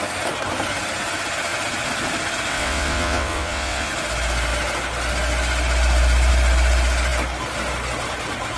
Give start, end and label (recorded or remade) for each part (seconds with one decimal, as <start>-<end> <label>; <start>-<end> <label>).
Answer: 0.0-2.5 recorded; 2.5-3.9 remade; 3.9-8.6 recorded